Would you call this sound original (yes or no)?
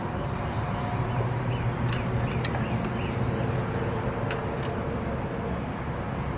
yes